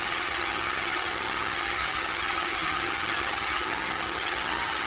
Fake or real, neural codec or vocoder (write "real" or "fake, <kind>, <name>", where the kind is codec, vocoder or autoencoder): fake, vocoder, HiFi-GAN